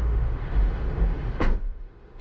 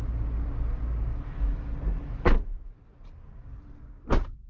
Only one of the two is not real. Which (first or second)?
first